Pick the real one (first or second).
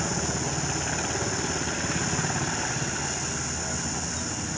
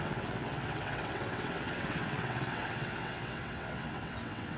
first